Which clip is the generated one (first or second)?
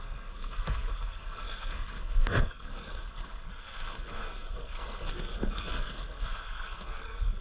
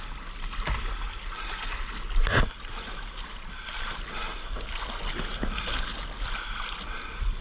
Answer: first